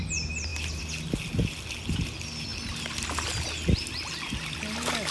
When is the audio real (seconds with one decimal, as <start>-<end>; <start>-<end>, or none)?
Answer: 0.0-5.1